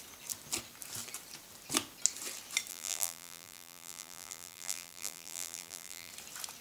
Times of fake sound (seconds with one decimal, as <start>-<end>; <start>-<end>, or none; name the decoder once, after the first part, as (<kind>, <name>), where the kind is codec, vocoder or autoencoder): 2.7-6.1 (vocoder, BigVGAN v2)